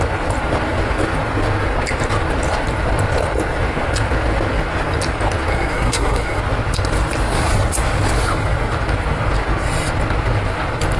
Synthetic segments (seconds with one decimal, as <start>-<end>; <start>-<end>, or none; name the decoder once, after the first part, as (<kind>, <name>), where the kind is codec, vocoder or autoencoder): 5.5-6.4 (codec, SNAC)